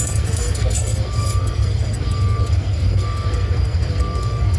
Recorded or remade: remade